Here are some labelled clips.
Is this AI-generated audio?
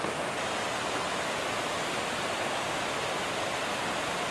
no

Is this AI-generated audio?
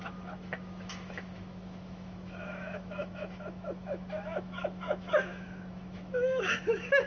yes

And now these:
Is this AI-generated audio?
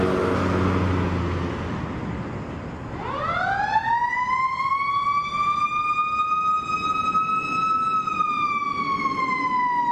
no